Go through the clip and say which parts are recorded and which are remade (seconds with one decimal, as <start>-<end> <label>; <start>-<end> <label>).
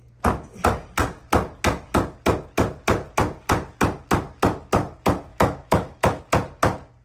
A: 0.0-5.3 recorded; 5.3-6.2 remade; 6.2-7.0 recorded